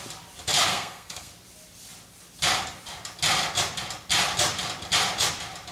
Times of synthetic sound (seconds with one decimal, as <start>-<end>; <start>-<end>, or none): 0.7-1.3